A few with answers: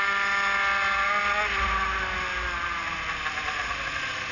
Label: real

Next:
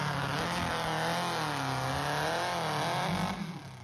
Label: real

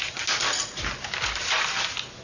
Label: real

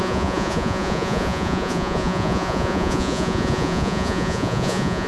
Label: fake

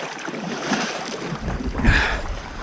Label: fake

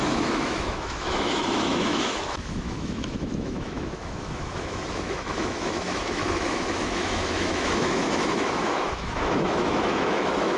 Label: fake